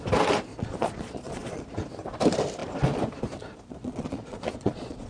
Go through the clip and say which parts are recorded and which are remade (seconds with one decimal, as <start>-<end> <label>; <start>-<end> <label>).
0.0-0.5 recorded; 0.5-1.6 remade; 1.6-3.8 recorded; 3.8-5.1 remade